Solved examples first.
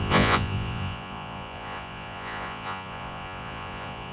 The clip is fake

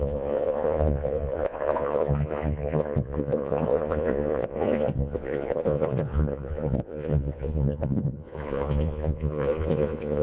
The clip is fake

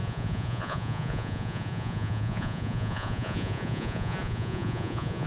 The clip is fake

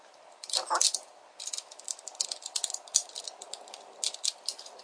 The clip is real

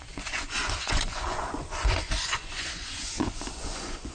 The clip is fake